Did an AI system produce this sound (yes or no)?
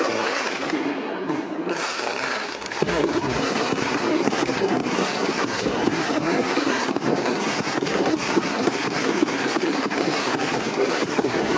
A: yes